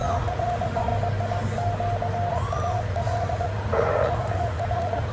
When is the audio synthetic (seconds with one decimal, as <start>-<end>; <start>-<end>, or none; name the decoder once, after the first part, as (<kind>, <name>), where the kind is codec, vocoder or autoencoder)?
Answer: 0.0-0.9 (vocoder, Vocos); 2.3-5.1